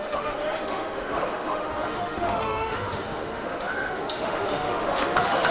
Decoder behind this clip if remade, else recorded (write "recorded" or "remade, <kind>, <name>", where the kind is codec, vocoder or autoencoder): remade, autoencoder, DAC-VAE